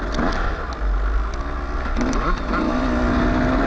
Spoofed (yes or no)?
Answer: no